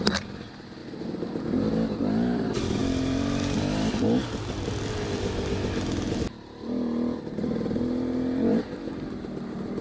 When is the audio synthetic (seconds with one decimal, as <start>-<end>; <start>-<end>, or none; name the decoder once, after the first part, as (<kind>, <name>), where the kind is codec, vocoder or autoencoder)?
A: none